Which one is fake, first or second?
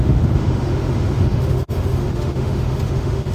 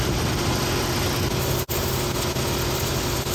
first